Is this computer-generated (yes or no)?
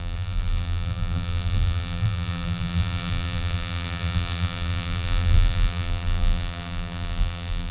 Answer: yes